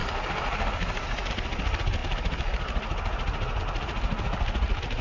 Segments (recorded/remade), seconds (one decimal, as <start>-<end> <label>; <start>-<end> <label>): 0.0-5.0 recorded